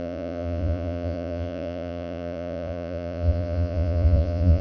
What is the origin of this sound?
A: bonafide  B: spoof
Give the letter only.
B